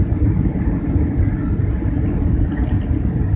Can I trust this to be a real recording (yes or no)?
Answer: yes